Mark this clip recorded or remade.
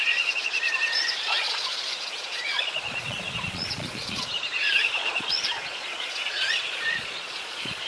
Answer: remade